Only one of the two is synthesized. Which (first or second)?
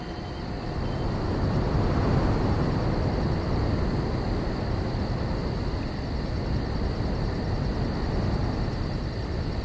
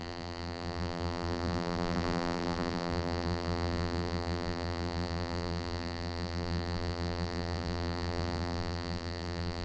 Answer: second